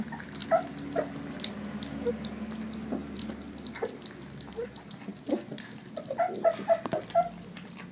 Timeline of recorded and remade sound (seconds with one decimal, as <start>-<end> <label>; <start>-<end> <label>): 0.0-7.9 recorded